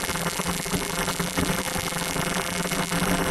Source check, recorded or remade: remade